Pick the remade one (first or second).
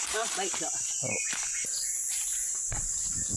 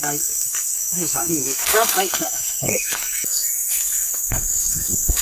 second